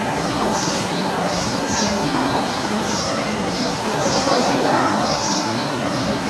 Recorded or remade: remade